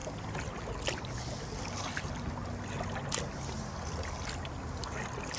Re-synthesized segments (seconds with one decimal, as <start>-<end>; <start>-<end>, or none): none